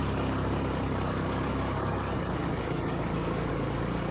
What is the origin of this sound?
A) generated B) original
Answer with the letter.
A